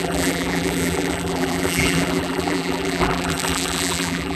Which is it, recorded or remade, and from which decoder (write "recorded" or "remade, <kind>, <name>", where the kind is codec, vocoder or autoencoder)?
remade, vocoder, BigVGAN v2